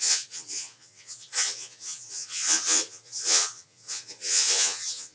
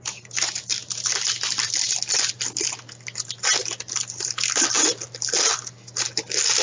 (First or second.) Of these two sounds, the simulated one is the first